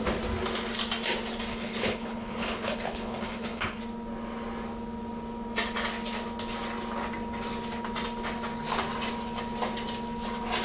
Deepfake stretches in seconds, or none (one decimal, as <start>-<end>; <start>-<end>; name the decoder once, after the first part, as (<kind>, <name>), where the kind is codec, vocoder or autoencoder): 1.5-3.8 (codec, HILCodec)